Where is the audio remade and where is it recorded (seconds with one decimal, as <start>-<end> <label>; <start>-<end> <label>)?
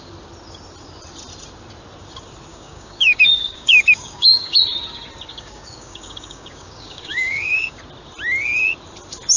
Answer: 0.0-2.5 recorded; 2.5-4.6 remade; 4.6-5.3 recorded; 5.3-7.8 remade; 7.8-9.4 recorded